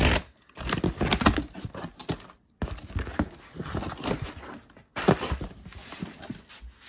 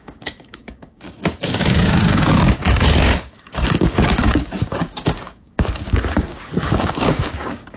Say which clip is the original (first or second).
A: first